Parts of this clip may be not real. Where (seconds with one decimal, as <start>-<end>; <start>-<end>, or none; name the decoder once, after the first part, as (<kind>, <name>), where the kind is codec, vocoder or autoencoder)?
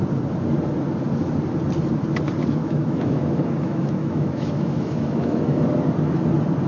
2.6-5.6 (autoencoder, DAC-VAE)